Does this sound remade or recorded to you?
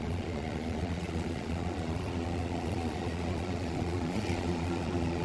remade